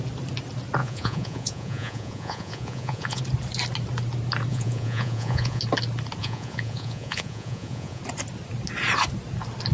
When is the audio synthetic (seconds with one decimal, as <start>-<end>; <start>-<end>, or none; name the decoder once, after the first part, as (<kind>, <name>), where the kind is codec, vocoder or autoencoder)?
0.8-3.2 (vocoder, Vocos); 4.5-5.6; 6.2-8.0